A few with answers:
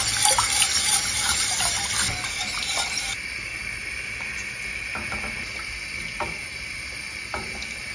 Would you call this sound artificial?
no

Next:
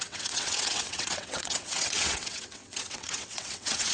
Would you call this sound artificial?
yes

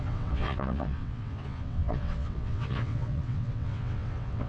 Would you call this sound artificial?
yes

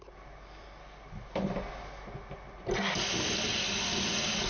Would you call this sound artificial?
no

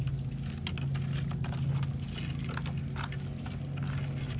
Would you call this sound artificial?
no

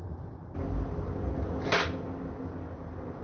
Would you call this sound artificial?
no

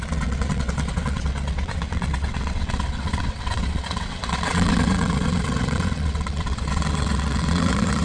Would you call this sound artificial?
yes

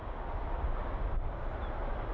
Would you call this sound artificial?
no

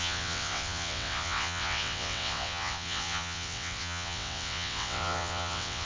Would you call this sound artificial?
yes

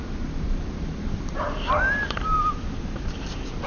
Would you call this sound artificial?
no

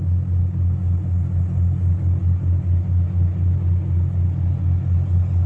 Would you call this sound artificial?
no